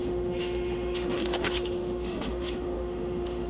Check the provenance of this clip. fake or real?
fake